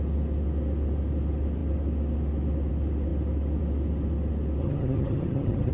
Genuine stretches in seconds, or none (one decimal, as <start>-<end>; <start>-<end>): 0.0-4.6